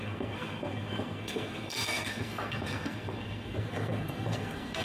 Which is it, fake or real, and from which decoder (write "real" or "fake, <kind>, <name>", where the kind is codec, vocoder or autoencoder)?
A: fake, codec, SNAC